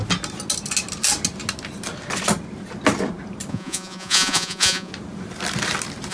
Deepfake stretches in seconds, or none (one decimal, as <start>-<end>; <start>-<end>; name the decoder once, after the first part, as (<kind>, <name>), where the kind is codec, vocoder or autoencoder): 3.5-4.9 (vocoder, Vocos)